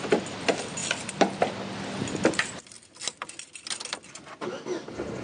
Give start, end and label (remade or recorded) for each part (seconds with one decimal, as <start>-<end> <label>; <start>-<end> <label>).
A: 0.0-5.2 recorded